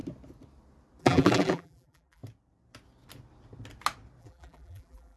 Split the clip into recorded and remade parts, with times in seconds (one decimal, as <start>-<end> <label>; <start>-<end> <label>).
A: 0.0-1.0 recorded; 1.0-2.2 remade; 2.2-4.2 recorded; 4.2-5.2 remade